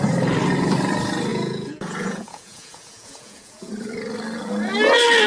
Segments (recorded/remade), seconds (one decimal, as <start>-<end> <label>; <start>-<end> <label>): 0.0-1.3 recorded; 1.3-3.7 remade; 3.7-5.3 recorded